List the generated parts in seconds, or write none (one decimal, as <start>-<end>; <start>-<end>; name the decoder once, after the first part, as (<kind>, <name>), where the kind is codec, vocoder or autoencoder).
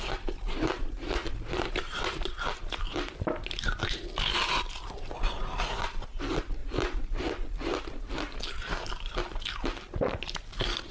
1.0-2.5 (vocoder, BigVGAN v2); 6.6-7.3